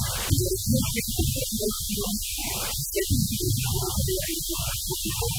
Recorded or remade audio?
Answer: recorded